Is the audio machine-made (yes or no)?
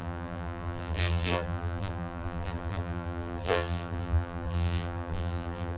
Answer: yes